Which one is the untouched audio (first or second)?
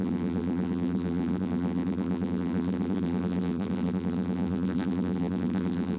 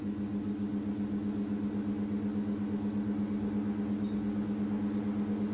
second